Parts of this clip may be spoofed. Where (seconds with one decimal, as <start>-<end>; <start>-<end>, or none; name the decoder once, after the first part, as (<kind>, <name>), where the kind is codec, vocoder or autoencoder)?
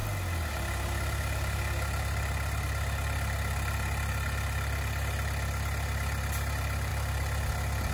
none